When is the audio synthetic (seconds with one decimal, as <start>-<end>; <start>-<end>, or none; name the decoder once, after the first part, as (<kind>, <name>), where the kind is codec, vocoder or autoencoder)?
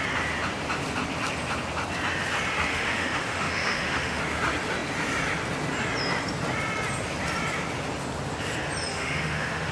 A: 2.7-4.2 (autoencoder, DAC-VAE); 8.9-9.7